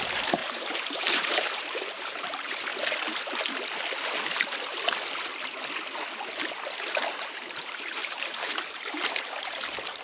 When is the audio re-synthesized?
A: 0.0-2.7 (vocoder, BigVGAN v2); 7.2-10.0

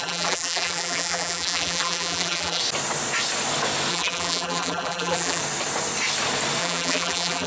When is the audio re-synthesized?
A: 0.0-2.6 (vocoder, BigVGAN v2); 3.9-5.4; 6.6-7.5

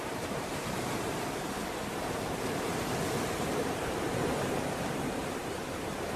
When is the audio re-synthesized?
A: 0.0-2.7 (vocoder, BigVGAN v2); 4.5-6.2